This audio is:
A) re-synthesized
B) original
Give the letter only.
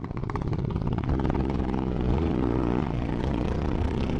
A